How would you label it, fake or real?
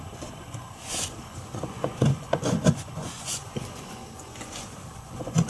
fake